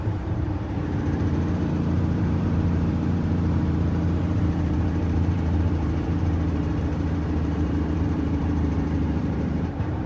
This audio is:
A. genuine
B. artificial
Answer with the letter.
B